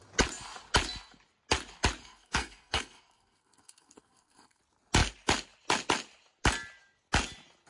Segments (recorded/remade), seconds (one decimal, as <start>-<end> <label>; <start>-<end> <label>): 0.0-2.0 recorded; 2.0-4.6 remade; 4.6-7.7 recorded